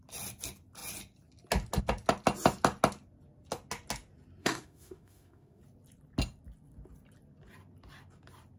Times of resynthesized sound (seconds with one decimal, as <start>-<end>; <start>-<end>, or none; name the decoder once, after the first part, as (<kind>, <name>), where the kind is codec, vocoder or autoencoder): 4.4-5.6 (autoencoder, DAC-VAE)